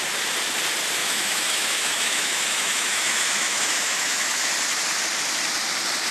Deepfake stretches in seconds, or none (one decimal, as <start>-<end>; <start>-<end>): 1.0-4.5